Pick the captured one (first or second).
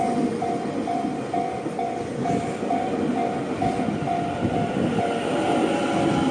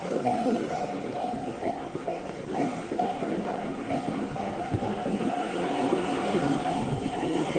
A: first